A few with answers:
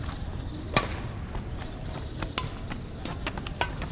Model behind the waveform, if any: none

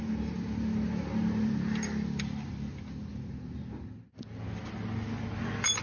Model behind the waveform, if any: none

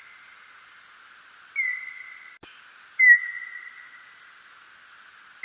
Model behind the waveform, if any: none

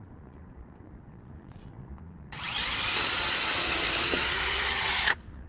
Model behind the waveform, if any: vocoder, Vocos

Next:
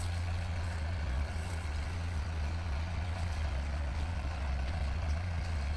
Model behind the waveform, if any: vocoder, Vocos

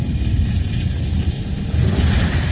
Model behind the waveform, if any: none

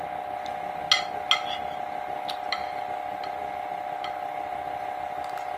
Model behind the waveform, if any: none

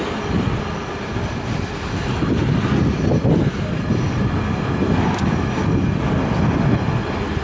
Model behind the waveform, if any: none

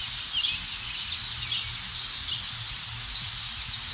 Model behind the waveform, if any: none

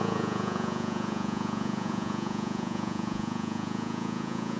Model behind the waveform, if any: vocoder, Vocos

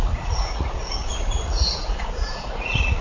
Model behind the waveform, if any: vocoder, Vocos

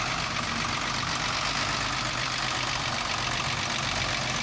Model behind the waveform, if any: none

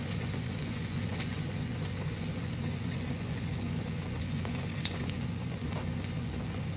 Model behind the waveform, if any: vocoder, Vocos